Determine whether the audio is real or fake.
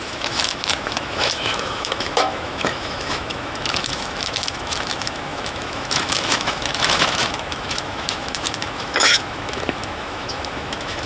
fake